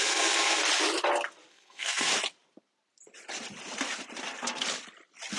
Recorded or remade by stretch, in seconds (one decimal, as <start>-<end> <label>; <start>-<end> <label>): 0.0-0.6 remade; 0.6-1.5 recorded; 1.5-2.1 remade; 2.1-5.4 recorded